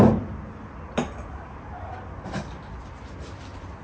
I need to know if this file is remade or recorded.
recorded